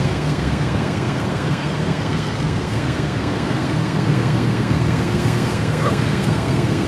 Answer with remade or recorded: remade